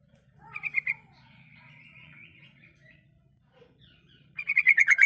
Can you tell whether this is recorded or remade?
remade